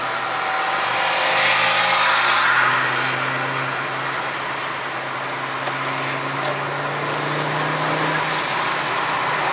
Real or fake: real